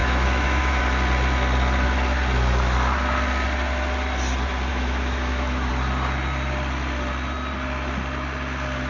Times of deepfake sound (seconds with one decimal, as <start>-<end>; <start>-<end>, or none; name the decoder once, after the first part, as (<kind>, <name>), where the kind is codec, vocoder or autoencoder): 0.0-0.8 (autoencoder, DAC-VAE); 4.7-5.7